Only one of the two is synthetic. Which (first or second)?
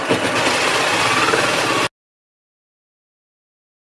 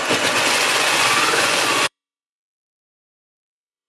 second